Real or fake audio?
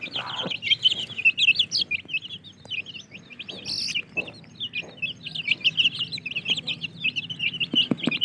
real